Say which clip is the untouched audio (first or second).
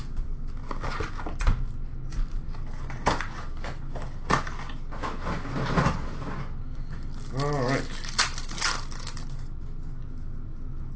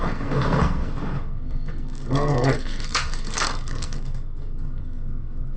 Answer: first